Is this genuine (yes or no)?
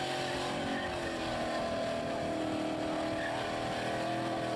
yes